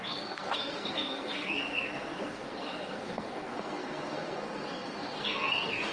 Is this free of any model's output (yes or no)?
no